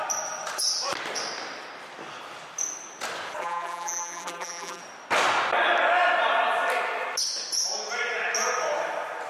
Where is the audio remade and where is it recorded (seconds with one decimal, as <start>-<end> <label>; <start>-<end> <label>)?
0.0-3.4 recorded; 3.4-4.8 remade; 4.8-9.3 recorded